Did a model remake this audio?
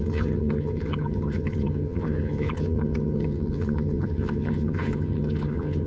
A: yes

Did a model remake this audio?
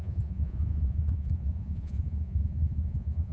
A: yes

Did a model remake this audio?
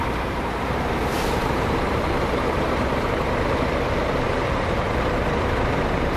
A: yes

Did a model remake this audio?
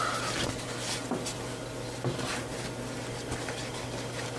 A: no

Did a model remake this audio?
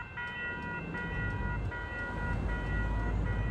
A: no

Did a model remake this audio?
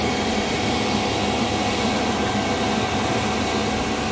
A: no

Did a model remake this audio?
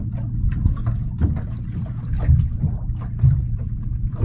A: no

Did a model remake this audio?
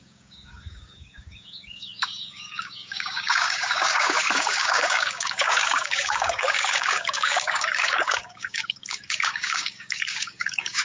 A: yes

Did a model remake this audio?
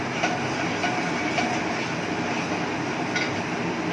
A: no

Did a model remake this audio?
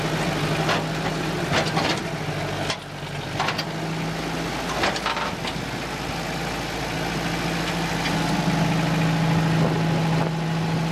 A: no